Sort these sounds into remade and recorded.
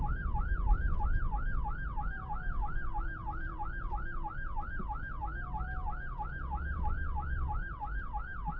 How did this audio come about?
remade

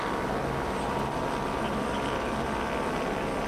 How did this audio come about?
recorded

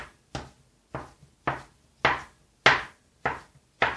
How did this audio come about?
recorded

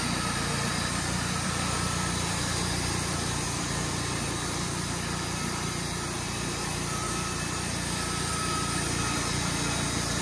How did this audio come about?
remade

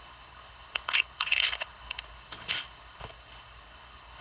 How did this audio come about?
remade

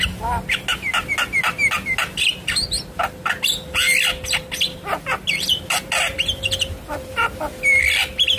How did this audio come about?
recorded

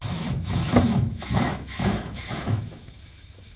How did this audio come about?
remade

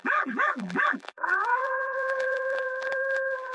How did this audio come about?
remade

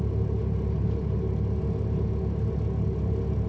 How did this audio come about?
recorded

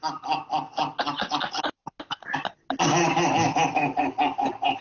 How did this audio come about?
recorded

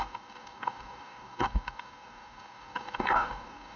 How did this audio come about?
remade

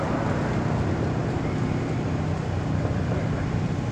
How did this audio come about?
recorded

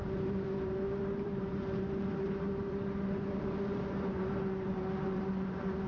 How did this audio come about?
remade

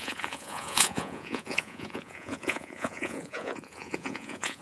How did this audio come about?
remade